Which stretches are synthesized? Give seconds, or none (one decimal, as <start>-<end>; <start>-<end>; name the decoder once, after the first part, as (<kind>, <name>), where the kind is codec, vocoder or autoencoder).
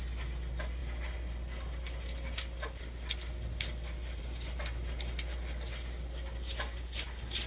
none